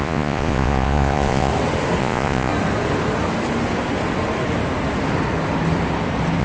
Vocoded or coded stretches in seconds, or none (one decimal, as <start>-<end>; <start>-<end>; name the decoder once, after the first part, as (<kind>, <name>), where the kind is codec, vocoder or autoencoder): 0.0-1.5 (vocoder, Vocos); 2.0-2.5